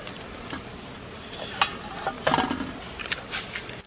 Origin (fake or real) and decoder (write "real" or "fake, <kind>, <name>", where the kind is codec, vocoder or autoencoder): real